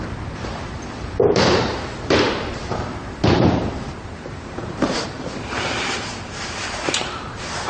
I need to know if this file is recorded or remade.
remade